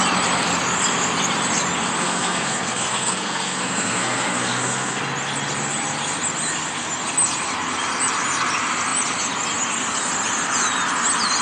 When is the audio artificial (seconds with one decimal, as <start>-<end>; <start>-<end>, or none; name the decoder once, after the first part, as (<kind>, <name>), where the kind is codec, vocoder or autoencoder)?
2.0-5.0 (codec, SNAC)